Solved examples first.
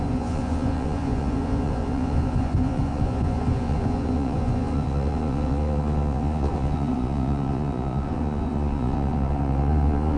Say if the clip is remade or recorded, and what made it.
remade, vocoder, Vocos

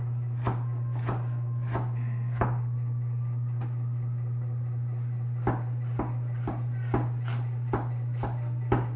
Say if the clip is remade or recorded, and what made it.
recorded